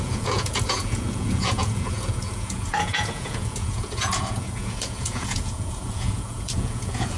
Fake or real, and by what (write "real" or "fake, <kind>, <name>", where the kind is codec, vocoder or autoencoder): fake, vocoder, Vocos